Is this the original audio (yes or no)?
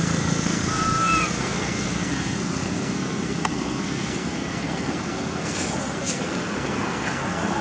no